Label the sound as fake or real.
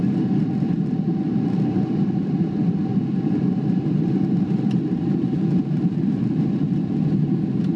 real